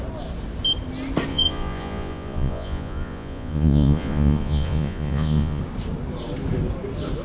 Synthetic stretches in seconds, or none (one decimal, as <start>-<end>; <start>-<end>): 1.3-5.6